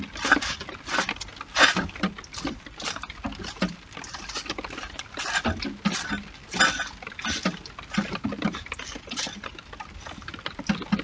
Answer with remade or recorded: recorded